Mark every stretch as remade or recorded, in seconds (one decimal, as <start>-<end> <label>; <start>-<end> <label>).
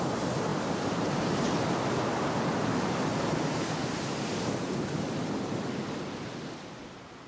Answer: 0.0-0.5 recorded; 0.5-1.5 remade; 1.5-3.1 recorded; 3.1-5.0 remade; 5.0-7.3 recorded